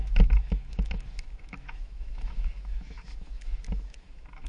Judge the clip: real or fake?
fake